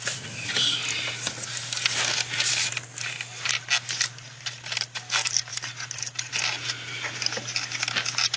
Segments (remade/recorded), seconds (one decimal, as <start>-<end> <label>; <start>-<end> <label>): 0.0-8.4 recorded